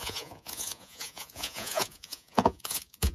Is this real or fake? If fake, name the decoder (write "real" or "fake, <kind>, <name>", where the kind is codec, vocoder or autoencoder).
fake, vocoder, Vocos